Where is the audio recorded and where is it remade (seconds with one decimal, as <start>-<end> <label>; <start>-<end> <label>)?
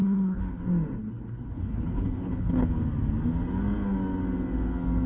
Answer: 0.0-0.6 remade; 0.6-1.0 recorded; 1.0-2.7 remade; 2.7-5.1 recorded